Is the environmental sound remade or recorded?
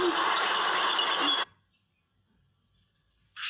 recorded